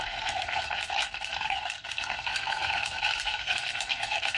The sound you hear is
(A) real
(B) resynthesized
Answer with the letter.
B